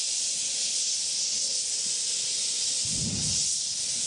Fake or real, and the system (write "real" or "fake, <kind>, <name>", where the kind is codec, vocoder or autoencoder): fake, vocoder, BigVGAN v2